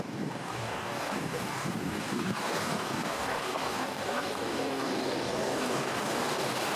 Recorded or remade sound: remade